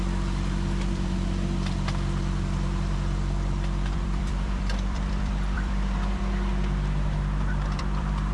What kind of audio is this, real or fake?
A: fake